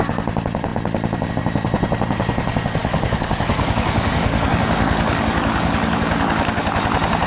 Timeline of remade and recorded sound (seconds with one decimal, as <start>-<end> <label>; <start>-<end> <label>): 0.0-2.8 recorded; 2.8-6.6 remade; 6.6-7.3 recorded